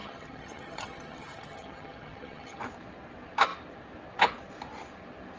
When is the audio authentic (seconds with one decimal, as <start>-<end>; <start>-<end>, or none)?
2.6-5.4